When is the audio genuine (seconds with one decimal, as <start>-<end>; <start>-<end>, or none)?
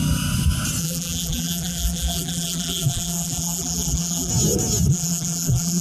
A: 0.0-0.8; 4.3-4.9